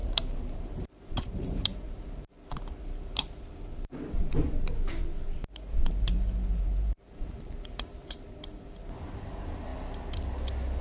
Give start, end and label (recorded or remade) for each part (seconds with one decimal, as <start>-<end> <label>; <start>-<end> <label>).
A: 0.0-5.0 remade; 5.0-5.4 recorded; 5.4-8.8 remade; 8.8-10.8 recorded